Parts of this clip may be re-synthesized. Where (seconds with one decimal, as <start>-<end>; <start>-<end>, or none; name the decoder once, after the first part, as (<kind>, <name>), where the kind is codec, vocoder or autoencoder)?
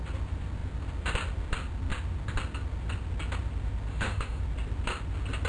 3.9-4.4 (autoencoder, DAC-VAE)